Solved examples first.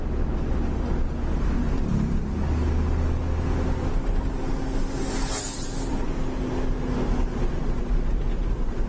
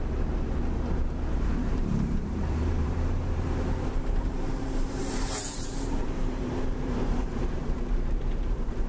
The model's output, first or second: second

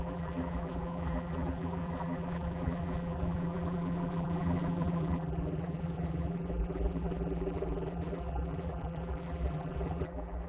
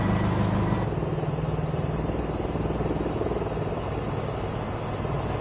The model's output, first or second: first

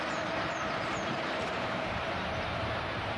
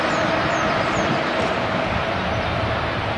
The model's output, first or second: first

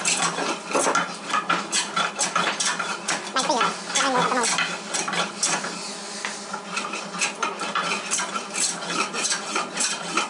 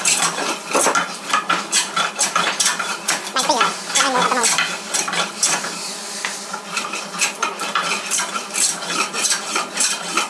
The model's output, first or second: second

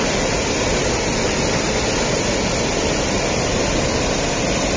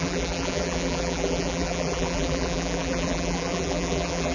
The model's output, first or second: second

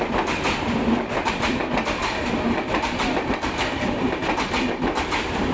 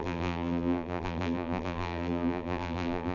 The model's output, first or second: second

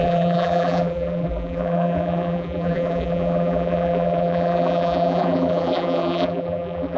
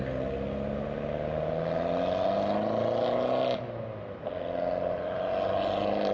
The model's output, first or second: first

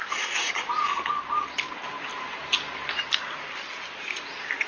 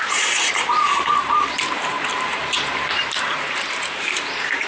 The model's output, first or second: second